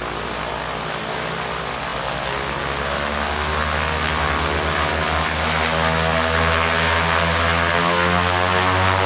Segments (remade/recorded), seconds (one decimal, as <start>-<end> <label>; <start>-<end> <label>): 0.0-9.1 recorded